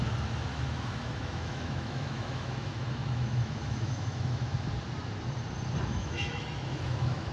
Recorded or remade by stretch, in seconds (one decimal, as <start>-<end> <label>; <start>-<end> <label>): 0.0-0.5 recorded; 0.5-4.7 remade; 4.7-5.9 recorded; 5.9-7.3 remade